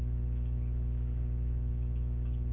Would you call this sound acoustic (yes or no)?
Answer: yes